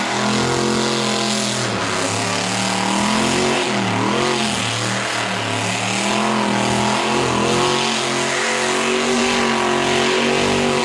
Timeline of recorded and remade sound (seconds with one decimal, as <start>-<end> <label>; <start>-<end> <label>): 0.0-10.8 recorded